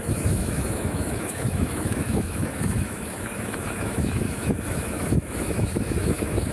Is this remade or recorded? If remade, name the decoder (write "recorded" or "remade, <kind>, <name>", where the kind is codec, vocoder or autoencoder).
remade, autoencoder, DAC-VAE